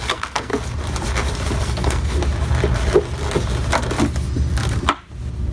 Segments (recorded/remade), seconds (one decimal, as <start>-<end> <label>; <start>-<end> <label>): 0.0-0.5 remade; 0.5-1.6 recorded; 1.6-2.2 remade; 2.2-5.5 recorded